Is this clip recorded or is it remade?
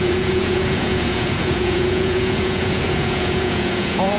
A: remade